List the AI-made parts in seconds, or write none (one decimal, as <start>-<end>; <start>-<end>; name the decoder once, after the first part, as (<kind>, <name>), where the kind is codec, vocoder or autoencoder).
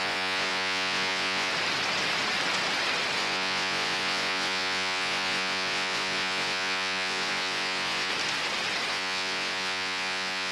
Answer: 0.0-1.5 (vocoder, Vocos); 3.2-8.1; 8.9-10.5